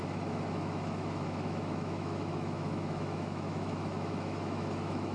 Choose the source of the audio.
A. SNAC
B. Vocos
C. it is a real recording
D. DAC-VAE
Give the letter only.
D